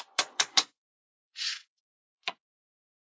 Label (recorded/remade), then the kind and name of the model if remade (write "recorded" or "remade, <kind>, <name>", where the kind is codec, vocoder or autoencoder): remade, vocoder, Vocos